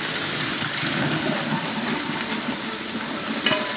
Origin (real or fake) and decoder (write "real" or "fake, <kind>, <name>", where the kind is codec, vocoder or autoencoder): real